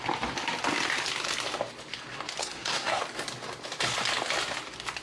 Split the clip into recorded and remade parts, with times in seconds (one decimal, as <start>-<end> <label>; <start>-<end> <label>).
0.0-2.4 recorded; 2.4-3.0 remade; 3.0-5.0 recorded